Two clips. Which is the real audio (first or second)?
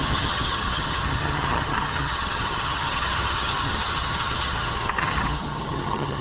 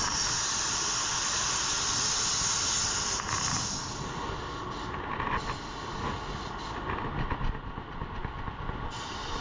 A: second